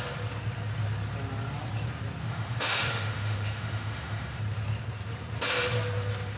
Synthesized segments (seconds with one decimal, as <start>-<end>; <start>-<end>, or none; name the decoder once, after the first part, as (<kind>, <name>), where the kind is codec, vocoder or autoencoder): 2.2-4.4 (autoencoder, DAC-VAE)